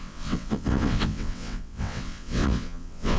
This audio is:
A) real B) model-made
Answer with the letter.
B